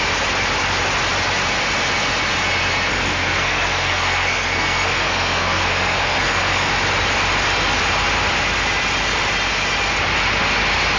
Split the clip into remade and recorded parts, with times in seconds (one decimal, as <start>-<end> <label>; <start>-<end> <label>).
0.0-2.9 recorded; 2.9-6.7 remade; 6.7-11.0 recorded